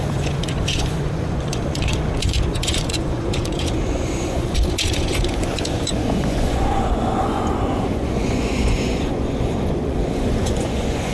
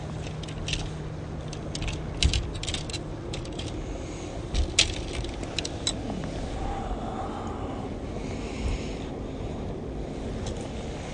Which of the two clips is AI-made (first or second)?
first